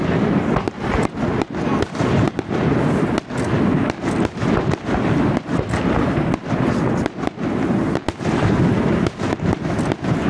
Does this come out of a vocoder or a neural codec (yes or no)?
no